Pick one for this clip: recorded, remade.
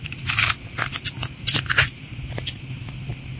recorded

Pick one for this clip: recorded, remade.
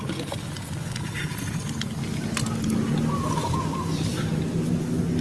recorded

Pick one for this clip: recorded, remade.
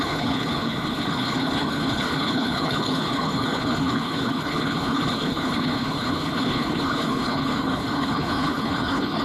remade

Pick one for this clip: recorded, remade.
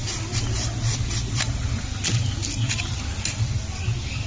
recorded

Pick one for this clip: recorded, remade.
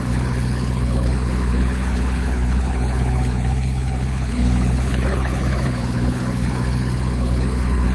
remade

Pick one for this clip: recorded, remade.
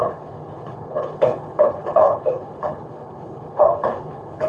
remade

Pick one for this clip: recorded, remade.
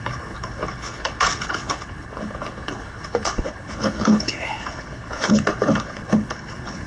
remade